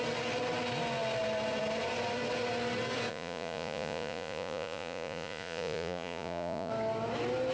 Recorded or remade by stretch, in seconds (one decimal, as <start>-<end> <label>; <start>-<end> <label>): 0.0-3.1 recorded; 3.1-6.7 remade; 6.7-7.5 recorded